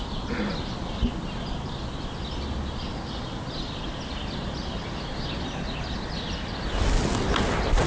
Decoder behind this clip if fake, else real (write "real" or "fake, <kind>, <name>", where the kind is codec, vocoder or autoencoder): real